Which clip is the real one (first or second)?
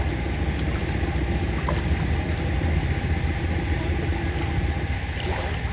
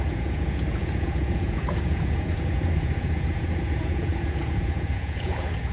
first